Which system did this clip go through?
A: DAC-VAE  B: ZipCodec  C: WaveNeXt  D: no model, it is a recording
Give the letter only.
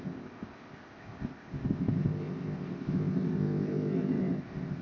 B